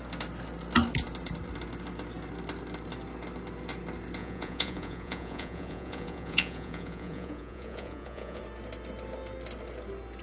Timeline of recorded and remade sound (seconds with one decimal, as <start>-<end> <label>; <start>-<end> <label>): 0.0-4.2 recorded; 4.2-8.4 remade; 8.4-10.2 recorded